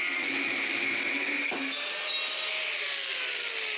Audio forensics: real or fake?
real